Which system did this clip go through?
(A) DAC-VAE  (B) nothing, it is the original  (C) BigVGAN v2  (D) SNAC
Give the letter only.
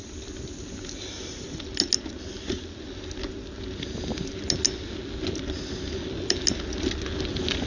B